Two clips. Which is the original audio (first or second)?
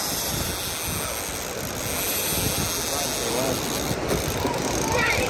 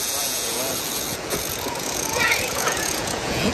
first